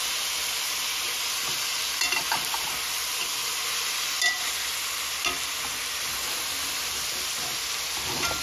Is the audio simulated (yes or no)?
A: no